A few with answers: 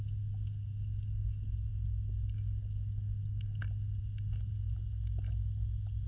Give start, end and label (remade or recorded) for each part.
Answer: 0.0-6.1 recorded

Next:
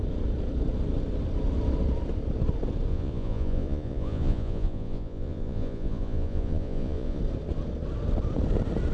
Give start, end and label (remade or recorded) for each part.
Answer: 0.0-2.9 recorded; 2.9-7.2 remade; 7.2-8.9 recorded

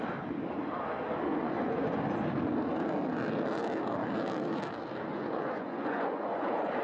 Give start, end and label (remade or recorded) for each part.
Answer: 0.0-1.3 recorded; 1.3-2.0 remade; 2.0-5.1 recorded; 5.1-6.8 remade

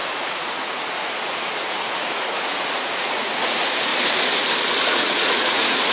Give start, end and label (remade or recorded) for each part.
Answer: 0.0-3.9 remade; 3.9-4.8 recorded; 4.8-5.9 remade

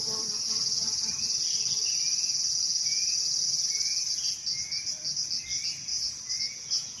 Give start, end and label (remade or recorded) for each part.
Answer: 0.0-5.9 recorded; 5.9-7.0 remade

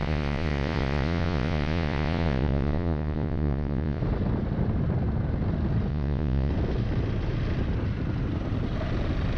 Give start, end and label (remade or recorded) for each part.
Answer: 0.0-4.0 remade; 4.0-5.9 recorded; 5.9-6.5 remade; 6.5-9.4 recorded